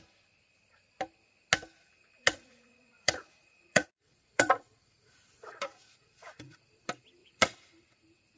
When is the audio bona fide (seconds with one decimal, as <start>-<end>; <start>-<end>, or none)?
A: 0.0-1.8; 6.6-7.2; 7.7-8.4